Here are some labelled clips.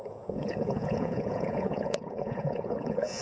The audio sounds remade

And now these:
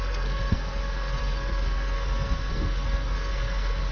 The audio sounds remade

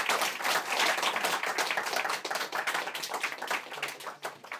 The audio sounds recorded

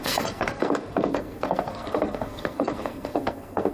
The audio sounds remade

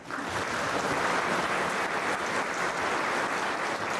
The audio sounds recorded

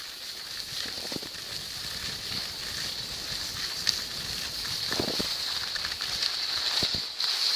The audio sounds recorded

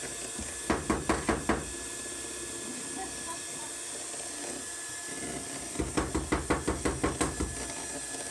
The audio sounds recorded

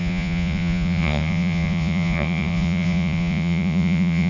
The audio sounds remade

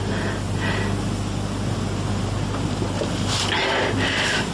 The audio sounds recorded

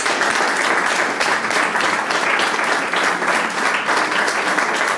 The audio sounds recorded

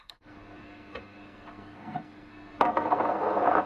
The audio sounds remade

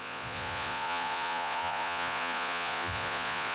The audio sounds remade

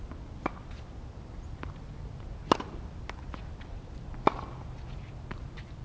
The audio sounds recorded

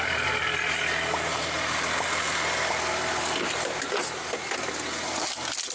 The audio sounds recorded